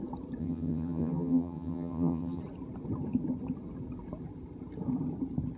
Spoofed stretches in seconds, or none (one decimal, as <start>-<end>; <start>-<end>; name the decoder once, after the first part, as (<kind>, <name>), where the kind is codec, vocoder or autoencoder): 0.4-2.4 (vocoder, HiFi-GAN)